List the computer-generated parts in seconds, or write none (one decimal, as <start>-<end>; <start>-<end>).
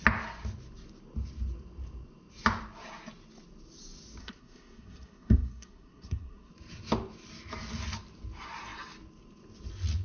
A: 4.2-6.5